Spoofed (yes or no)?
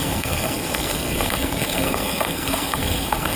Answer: yes